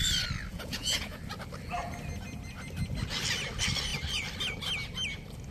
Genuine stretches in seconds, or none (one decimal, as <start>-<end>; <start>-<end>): 0.0-0.5; 1.2-5.5